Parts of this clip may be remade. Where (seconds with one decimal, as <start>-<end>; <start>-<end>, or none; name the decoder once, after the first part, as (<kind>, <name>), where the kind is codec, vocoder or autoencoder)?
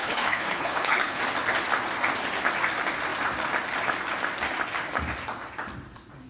0.0-1.2 (codec, HILCodec)